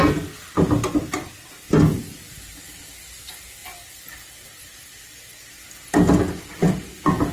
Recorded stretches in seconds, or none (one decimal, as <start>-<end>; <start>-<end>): 0.0-7.3